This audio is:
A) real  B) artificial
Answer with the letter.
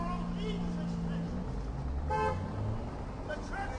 A